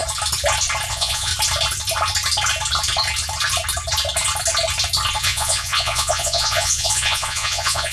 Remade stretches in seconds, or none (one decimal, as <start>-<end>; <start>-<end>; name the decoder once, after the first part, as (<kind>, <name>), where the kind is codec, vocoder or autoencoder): 0.9-1.3 (vocoder, Vocos); 5.2-7.9